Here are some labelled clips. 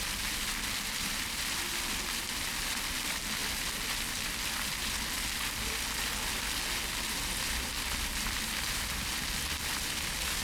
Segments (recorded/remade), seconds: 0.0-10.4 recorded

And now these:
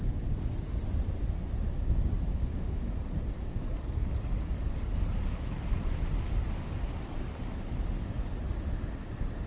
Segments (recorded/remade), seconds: 0.0-2.3 recorded; 2.3-2.9 remade; 2.9-9.5 recorded

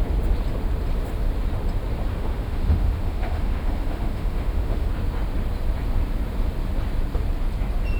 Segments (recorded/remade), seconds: 0.0-2.1 recorded; 2.1-4.9 remade; 4.9-8.0 recorded

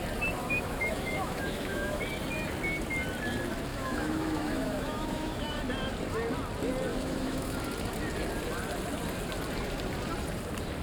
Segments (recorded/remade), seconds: 0.0-0.4 recorded; 0.4-2.0 remade; 2.0-3.7 recorded; 3.7-5.6 remade; 5.6-6.9 recorded; 6.9-7.6 remade; 7.6-10.8 recorded

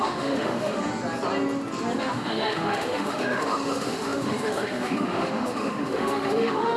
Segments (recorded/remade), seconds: 0.0-0.9 remade; 0.9-2.0 recorded; 2.0-6.8 remade

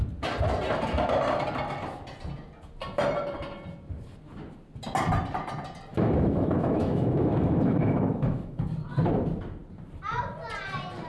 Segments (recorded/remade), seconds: 0.0-5.9 recorded; 5.9-8.7 remade; 8.7-11.1 recorded